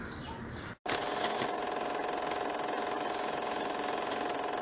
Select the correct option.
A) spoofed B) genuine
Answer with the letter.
B